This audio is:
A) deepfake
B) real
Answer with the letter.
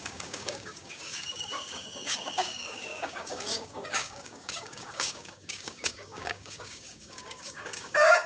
A